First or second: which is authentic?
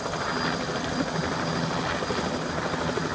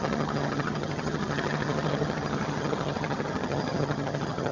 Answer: first